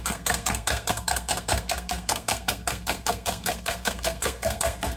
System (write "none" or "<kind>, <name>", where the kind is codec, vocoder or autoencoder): codec, SNAC